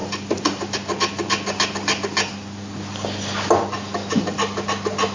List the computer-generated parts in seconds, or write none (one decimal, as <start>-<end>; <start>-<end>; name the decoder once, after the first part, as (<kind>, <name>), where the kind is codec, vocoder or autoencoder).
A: none